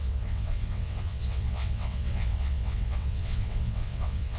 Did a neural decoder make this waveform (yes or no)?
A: yes